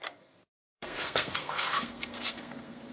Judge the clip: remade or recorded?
remade